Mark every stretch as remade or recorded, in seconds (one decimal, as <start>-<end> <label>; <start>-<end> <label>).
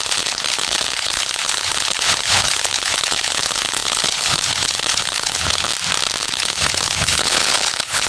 0.0-5.7 remade; 5.7-6.2 recorded; 6.2-8.1 remade